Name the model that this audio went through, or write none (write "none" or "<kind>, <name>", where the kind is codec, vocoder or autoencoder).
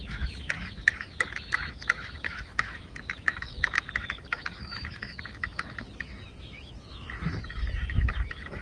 autoencoder, DAC-VAE